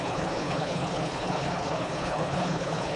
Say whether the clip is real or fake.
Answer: fake